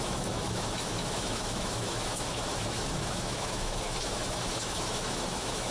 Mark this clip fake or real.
fake